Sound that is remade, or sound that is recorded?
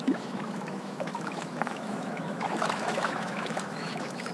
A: remade